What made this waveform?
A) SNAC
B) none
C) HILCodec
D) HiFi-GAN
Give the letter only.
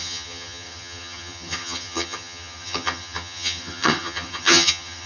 D